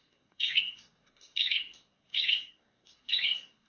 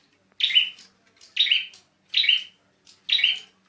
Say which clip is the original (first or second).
second